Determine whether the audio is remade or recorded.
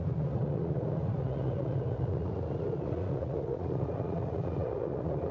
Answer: remade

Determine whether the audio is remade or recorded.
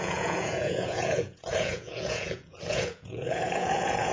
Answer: remade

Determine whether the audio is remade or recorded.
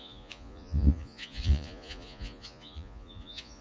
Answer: remade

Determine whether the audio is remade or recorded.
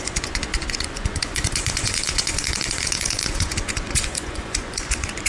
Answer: remade